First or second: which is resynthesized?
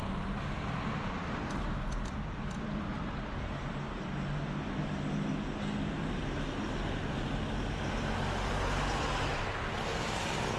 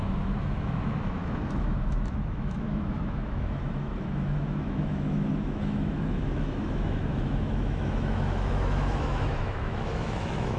second